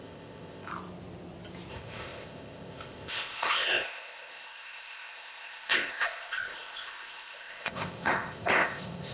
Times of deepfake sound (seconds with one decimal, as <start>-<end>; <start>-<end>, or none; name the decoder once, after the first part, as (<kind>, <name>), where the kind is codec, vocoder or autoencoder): 0.0-0.7 (codec, ZipCodec); 1.7-9.1